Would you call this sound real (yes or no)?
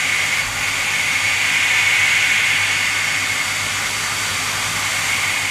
yes